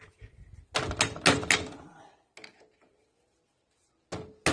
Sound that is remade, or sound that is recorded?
recorded